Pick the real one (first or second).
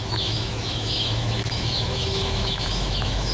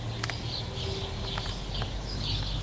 second